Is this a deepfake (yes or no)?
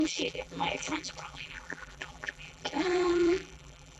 yes